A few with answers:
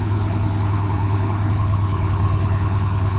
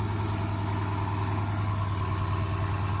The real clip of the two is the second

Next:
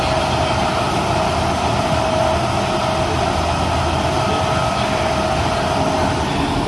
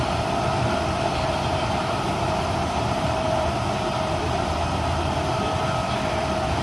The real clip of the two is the first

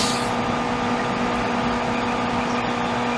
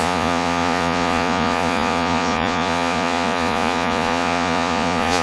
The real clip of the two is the first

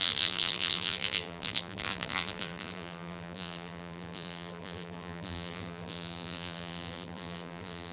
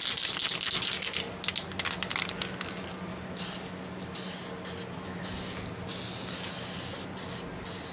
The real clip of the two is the second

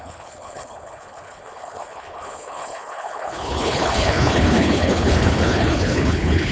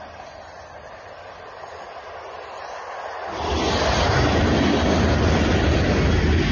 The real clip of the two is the second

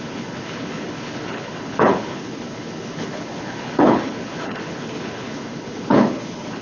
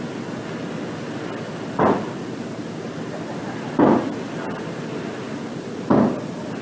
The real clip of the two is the second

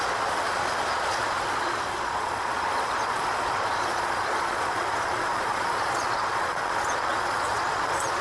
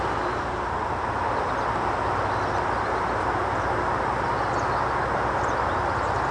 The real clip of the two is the second